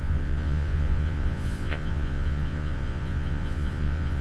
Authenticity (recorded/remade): remade